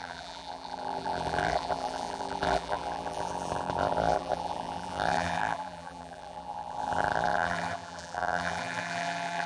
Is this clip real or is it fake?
fake